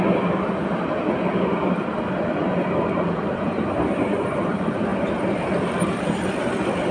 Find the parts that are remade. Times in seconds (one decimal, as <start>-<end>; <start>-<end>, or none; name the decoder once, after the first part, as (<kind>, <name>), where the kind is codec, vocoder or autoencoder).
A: 4.9-6.3 (vocoder, BigVGAN v2)

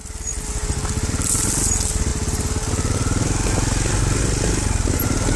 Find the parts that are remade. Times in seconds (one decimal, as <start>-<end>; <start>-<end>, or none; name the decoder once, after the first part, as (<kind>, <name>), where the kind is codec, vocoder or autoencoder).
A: none

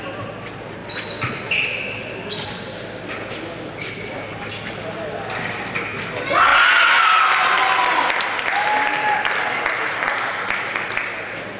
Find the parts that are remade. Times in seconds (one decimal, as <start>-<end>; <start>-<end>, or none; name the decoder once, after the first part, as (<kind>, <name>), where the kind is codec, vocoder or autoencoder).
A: none

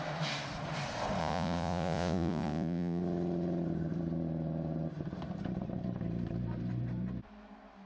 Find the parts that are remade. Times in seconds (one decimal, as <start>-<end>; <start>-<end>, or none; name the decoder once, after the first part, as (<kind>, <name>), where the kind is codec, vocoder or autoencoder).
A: 1.2-3.0 (vocoder, Vocos)

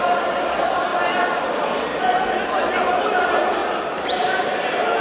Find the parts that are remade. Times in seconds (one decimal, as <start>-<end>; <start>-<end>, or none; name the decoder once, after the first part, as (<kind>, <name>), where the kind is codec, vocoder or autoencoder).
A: 0.0-0.9 (vocoder, BigVGAN v2); 3.0-3.6